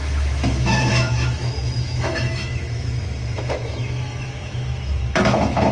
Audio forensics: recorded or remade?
remade